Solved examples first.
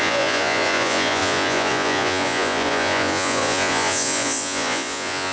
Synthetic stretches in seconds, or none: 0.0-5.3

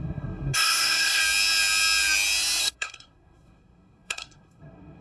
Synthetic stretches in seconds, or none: 0.0-1.2; 2.6-5.0

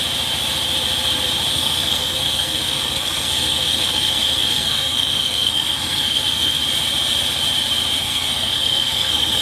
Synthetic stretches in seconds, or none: 1.5-6.6; 8.0-9.4

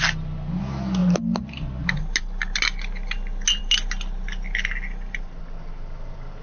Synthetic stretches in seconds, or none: none

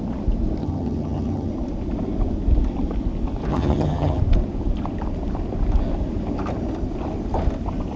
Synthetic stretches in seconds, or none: 0.6-1.5; 3.5-4.2